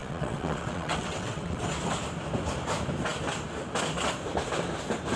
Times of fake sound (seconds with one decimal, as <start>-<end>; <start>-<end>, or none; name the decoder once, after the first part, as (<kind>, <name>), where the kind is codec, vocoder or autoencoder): 0.0-1.6 (vocoder, WaveNeXt)